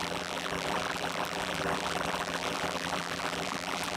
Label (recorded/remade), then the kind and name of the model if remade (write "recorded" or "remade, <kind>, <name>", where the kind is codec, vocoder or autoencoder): remade, vocoder, BigVGAN v2